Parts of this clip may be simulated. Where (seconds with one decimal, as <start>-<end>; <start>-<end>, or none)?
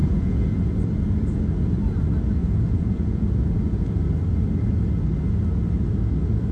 0.0-0.9; 2.4-3.9